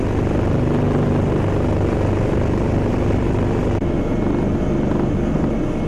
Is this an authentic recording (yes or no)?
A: yes